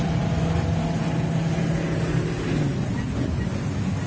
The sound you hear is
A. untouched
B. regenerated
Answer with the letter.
A